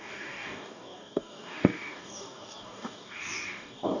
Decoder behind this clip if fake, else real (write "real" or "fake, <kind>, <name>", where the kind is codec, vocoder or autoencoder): fake, codec, DAC